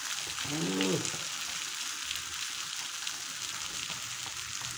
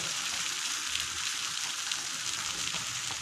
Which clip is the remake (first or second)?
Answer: second